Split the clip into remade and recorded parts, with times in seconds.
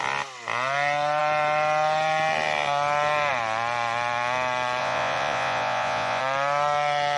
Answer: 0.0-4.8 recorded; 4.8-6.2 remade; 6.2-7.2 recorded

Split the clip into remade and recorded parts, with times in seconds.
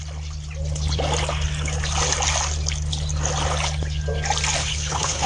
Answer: 0.0-4.6 recorded; 4.6-5.3 remade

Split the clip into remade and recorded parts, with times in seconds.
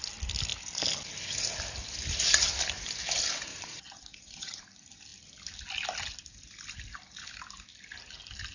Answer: 0.0-3.5 recorded; 3.5-4.6 remade; 4.6-8.5 recorded